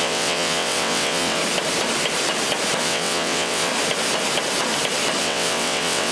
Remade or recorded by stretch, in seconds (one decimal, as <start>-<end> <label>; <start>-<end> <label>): 0.0-1.4 remade; 1.4-2.8 recorded; 2.8-3.7 remade; 3.7-5.2 recorded; 5.2-6.1 remade